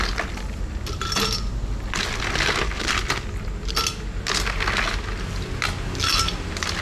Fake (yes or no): no